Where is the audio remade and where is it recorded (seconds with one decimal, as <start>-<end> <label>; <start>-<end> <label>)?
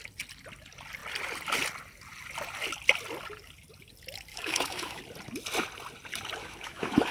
0.0-4.3 recorded; 4.3-5.0 remade; 5.0-6.4 recorded; 6.4-7.1 remade